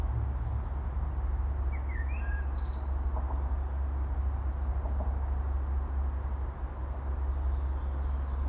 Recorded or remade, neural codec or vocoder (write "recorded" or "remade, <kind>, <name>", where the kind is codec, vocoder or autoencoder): recorded